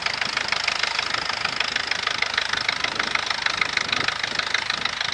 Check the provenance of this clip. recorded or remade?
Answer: recorded